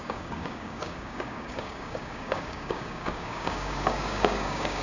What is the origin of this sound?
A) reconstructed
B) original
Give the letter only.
A